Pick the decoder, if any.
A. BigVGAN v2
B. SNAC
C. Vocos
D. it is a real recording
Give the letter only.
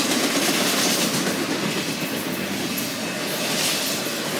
D